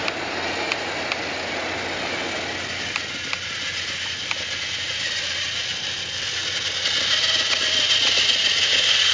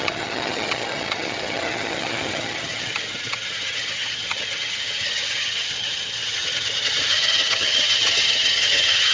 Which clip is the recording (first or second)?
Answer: first